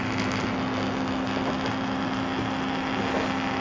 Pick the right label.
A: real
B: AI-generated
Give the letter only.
A